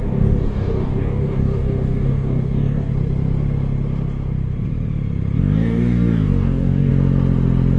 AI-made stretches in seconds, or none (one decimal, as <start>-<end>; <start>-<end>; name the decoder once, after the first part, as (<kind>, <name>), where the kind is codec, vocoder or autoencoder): 0.0-2.9 (codec, DAC); 5.4-6.9

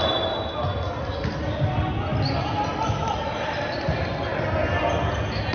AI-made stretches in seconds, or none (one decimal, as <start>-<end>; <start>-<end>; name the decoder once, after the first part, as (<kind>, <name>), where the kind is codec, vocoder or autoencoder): none

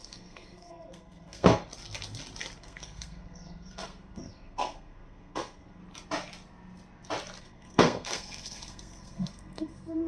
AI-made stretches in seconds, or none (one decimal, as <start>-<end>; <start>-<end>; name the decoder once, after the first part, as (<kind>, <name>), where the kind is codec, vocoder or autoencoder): 0.0-1.6 (codec, SNAC); 2.6-5.8; 7.4-10.1

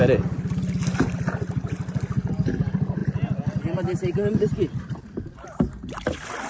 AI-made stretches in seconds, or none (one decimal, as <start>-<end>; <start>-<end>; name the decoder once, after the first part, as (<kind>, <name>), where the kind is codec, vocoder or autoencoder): none